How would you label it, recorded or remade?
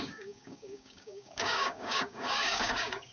remade